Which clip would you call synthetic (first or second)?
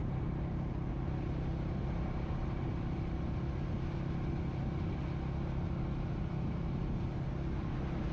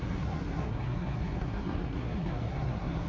second